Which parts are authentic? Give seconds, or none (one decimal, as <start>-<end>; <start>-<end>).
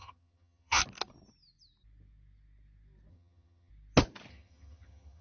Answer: 0.8-3.1; 3.7-4.3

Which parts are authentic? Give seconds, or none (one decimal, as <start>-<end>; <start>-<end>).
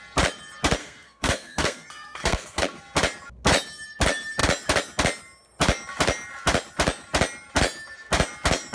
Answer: 0.0-0.8; 2.6-8.7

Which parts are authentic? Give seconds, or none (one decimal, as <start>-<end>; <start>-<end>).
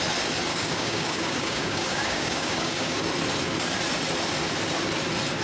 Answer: 0.0-0.5; 3.0-5.4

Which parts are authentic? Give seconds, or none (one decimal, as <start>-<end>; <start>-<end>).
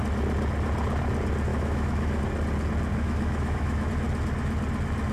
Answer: 0.0-1.5; 2.2-2.9; 3.9-5.1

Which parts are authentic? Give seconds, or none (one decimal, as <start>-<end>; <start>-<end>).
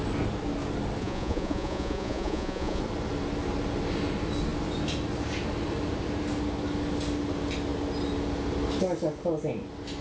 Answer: 0.0-1.0; 2.8-10.0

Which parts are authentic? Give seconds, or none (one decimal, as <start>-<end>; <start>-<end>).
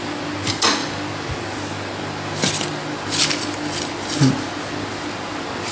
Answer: 0.0-5.7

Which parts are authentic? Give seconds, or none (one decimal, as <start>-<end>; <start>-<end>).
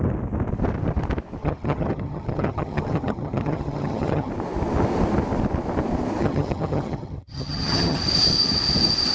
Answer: 0.0-1.4; 4.3-6.2; 8.0-9.1